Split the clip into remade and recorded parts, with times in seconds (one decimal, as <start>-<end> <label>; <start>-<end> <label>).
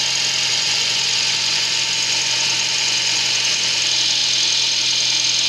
0.0-0.5 recorded; 0.5-3.8 remade; 3.8-5.5 recorded